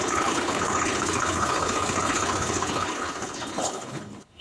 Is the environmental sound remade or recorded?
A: remade